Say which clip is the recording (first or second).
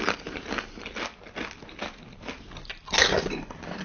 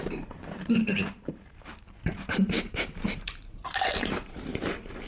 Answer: first